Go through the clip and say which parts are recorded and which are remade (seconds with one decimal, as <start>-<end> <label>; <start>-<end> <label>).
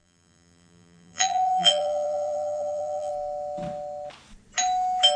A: 0.0-3.1 remade; 3.1-5.2 recorded